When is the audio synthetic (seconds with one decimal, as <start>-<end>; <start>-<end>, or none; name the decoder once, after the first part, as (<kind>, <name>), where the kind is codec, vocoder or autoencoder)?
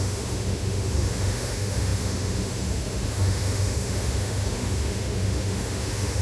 0.0-6.2 (autoencoder, DAC-VAE)